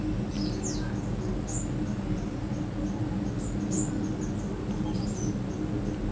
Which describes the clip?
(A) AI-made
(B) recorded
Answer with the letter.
B